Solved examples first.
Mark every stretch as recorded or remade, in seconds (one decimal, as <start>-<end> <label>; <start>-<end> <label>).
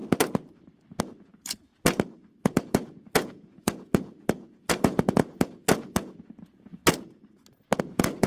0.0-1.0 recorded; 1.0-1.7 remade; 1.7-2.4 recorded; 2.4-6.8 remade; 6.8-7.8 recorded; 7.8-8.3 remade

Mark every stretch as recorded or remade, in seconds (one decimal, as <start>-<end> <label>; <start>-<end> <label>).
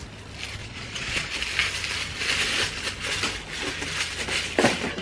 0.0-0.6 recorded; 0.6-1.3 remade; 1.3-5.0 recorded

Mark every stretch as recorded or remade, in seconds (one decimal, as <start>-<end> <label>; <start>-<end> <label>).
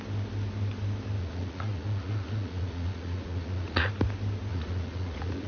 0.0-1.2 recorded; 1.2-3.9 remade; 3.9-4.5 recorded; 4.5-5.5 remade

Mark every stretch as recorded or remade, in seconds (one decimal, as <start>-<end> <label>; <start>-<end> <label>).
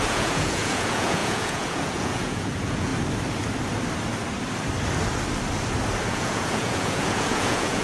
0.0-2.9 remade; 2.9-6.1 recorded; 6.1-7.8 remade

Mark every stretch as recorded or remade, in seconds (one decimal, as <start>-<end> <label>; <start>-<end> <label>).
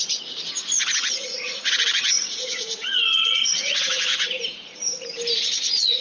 0.0-4.1 remade; 4.1-5.4 recorded; 5.4-6.0 remade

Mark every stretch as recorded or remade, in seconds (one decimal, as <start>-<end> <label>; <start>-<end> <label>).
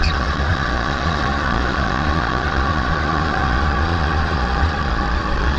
0.0-5.6 remade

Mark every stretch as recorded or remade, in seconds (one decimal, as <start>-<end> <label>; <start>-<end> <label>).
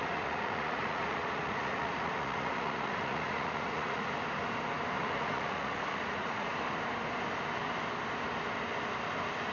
0.0-4.1 remade; 4.1-5.0 recorded; 5.0-6.5 remade; 6.5-9.5 recorded